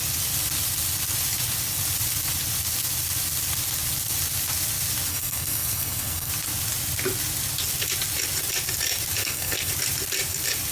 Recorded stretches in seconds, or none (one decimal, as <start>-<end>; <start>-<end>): 0.0-5.1; 6.3-9.2; 9.7-10.7